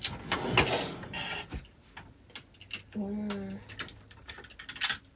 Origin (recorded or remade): recorded